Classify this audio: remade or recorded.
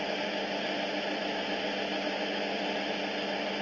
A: recorded